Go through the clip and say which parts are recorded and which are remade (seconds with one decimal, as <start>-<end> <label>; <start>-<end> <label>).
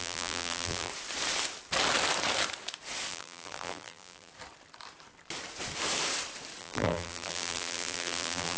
0.0-0.9 remade; 0.9-3.1 recorded; 3.1-4.3 remade; 4.3-6.6 recorded; 6.6-8.6 remade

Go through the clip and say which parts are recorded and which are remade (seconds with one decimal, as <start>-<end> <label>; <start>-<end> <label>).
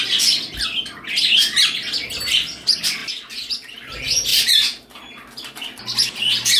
0.0-4.3 recorded; 4.3-5.0 remade; 5.0-6.6 recorded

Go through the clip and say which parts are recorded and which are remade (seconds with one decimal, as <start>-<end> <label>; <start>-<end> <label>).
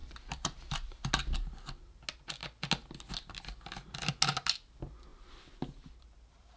0.0-1.1 remade; 1.1-6.6 recorded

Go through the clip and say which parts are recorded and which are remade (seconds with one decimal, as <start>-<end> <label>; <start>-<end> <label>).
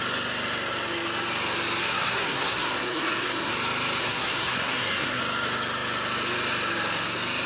0.0-1.8 recorded; 1.8-3.5 remade; 3.5-4.0 recorded; 4.0-5.2 remade; 5.2-7.5 recorded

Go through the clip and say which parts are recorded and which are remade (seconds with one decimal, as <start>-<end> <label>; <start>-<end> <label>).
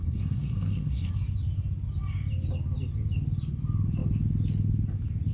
0.0-1.1 remade; 1.1-5.3 recorded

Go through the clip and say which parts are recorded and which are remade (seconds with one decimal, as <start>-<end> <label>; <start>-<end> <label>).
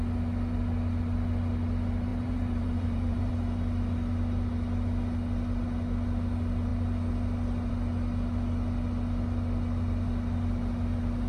0.0-2.1 recorded; 2.1-3.3 remade; 3.3-11.3 recorded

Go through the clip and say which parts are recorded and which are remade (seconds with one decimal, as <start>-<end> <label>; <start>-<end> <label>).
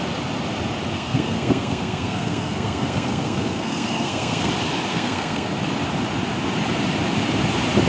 0.0-0.9 recorded; 0.9-4.5 remade; 4.5-4.9 recorded; 4.9-5.5 remade; 5.5-7.9 recorded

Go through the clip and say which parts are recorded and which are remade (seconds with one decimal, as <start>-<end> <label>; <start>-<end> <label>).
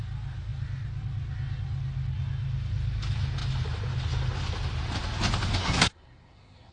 0.0-5.6 recorded; 5.6-6.7 remade